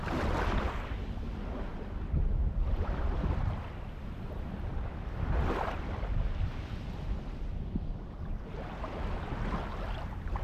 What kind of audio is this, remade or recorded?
recorded